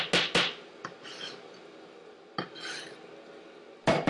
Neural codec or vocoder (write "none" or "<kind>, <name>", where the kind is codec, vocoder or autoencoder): none